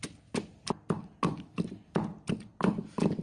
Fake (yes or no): no